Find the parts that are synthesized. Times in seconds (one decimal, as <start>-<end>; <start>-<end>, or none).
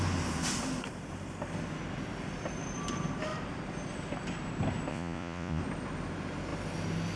4.9-5.6